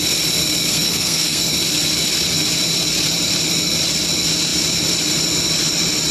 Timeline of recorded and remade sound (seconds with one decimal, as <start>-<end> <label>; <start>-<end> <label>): 0.0-0.7 recorded; 0.7-1.5 remade; 1.5-6.1 recorded